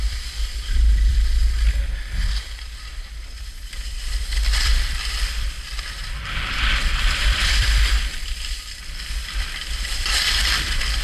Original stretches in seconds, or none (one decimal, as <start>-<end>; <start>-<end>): 1.4-4.2; 6.0-6.5